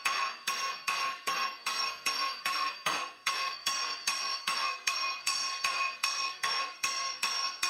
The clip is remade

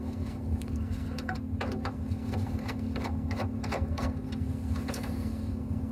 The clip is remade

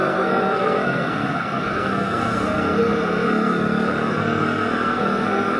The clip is remade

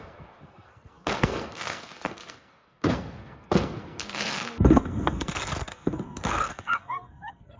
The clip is remade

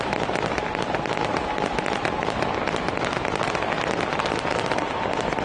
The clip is recorded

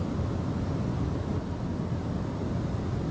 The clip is recorded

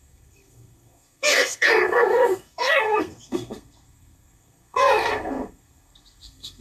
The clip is remade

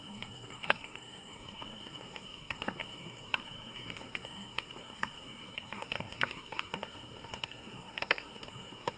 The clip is remade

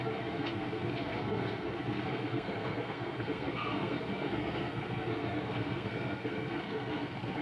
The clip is remade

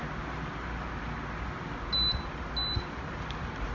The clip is recorded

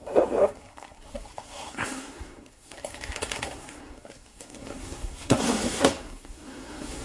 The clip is remade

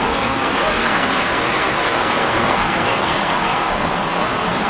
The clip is remade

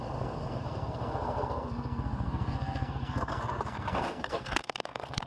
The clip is remade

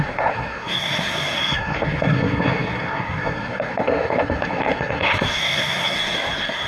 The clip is remade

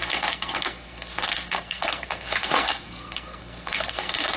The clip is remade